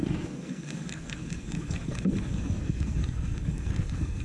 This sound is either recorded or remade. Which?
remade